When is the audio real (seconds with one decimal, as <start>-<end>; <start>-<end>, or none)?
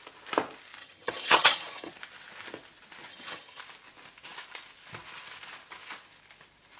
0.0-0.8; 1.9-3.1; 3.6-6.8